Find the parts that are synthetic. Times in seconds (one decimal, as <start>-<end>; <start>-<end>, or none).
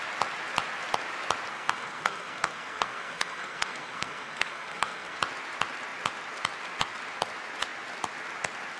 1.5-5.2